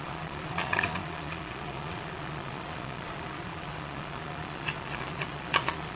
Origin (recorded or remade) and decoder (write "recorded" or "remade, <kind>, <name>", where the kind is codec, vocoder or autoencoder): remade, vocoder, Vocos